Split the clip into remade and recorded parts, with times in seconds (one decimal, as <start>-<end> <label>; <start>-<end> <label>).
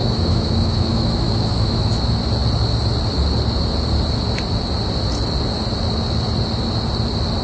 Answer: 0.0-2.0 remade; 2.0-7.4 recorded